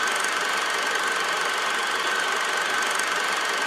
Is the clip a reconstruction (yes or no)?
no